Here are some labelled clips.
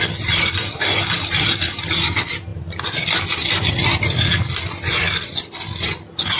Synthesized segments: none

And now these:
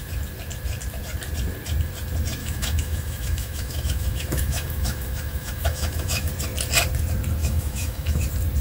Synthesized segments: 2.4-6.3 (autoencoder, DAC-VAE); 7.4-8.2